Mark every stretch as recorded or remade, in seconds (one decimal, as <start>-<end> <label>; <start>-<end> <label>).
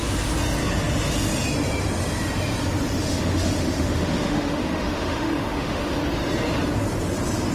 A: 0.0-3.0 recorded; 3.0-6.0 remade; 6.0-7.5 recorded